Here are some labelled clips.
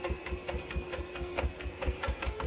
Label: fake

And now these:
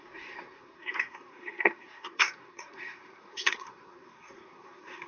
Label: fake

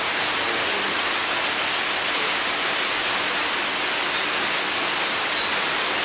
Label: real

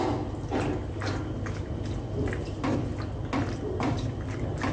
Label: real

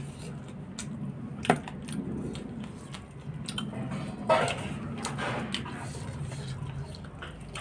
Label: real